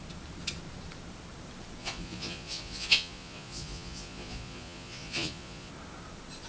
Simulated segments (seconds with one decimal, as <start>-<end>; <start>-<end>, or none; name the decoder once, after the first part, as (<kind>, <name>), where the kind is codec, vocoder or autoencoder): 1.8-5.7 (vocoder, Vocos)